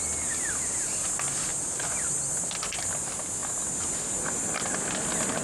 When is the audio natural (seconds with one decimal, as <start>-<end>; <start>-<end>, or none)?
0.0-5.4